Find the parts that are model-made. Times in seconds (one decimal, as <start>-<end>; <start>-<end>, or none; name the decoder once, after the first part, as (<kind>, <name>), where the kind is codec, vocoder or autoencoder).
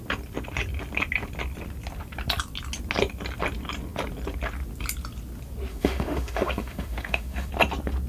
5.7-7.5 (autoencoder, DAC-VAE)